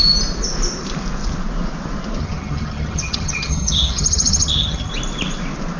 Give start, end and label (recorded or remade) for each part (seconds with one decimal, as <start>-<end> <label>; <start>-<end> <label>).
0.0-2.2 recorded; 2.2-4.9 remade; 4.9-5.8 recorded